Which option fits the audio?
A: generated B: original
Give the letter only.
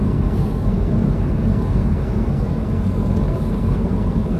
A